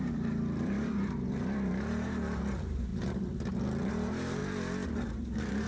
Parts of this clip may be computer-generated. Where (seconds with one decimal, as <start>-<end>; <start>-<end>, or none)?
0.0-2.9; 3.9-4.4; 5.1-5.7